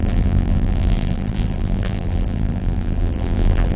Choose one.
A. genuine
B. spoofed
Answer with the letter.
B